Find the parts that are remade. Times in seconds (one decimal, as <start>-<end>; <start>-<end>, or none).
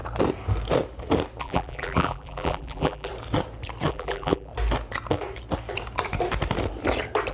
1.4-3.1; 3.9-4.5